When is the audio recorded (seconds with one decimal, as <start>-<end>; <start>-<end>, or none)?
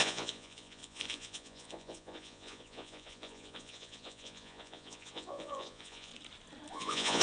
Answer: 6.1-6.7